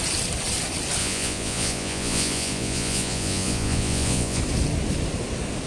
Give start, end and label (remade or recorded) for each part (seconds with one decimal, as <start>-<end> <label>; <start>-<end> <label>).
0.0-1.0 recorded; 1.0-4.4 remade; 4.4-5.7 recorded